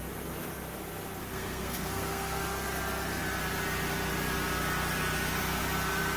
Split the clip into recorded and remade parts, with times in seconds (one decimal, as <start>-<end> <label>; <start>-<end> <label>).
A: 0.0-1.2 recorded; 1.2-2.4 remade; 2.4-6.2 recorded